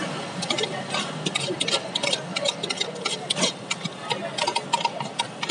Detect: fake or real real